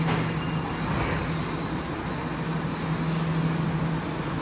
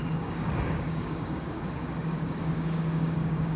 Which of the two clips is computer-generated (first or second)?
second